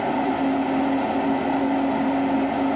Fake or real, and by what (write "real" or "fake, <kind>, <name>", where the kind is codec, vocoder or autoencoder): real